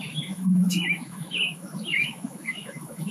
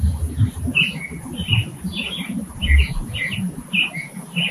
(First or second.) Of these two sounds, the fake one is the first